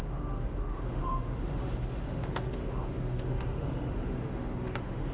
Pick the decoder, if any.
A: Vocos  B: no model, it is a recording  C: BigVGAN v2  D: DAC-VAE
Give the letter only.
D